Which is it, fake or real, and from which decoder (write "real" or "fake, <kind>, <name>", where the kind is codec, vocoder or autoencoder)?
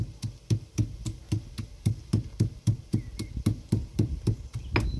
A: real